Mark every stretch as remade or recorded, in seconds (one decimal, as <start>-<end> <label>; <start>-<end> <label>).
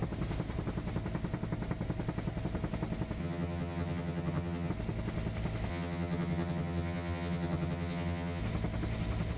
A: 0.0-3.2 recorded; 3.2-4.7 remade; 4.7-5.7 recorded; 5.7-8.4 remade; 8.4-9.4 recorded